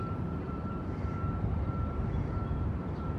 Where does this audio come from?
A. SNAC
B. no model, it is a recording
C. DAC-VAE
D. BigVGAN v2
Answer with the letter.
D